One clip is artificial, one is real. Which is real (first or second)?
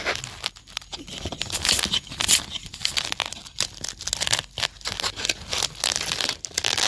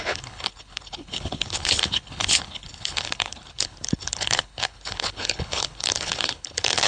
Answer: first